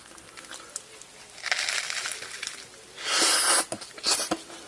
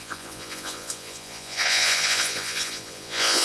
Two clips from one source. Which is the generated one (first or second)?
second